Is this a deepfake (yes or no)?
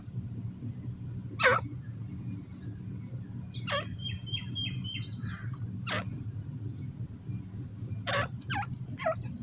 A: no